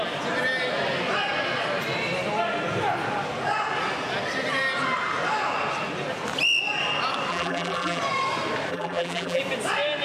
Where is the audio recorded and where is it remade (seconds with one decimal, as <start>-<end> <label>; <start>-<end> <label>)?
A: 0.0-7.3 recorded; 7.3-8.0 remade; 8.0-8.7 recorded; 8.7-9.4 remade; 9.4-10.0 recorded